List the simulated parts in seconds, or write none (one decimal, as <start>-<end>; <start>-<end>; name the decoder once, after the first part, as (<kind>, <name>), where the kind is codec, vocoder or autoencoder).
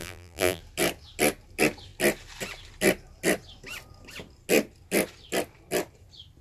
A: 0.0-0.6 (vocoder, BigVGAN v2)